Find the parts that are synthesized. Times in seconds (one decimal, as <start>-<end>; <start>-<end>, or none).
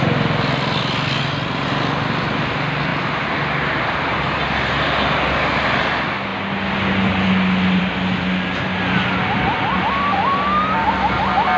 none